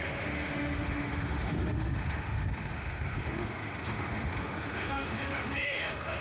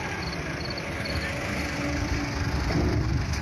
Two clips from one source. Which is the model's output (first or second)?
first